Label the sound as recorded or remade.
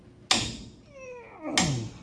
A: recorded